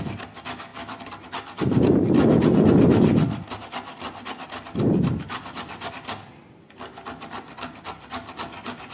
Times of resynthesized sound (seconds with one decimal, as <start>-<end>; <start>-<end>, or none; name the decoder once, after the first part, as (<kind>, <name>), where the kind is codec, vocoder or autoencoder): none